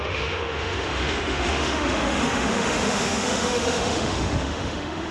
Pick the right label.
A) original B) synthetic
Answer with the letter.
B